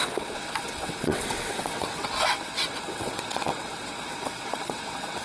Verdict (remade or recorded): remade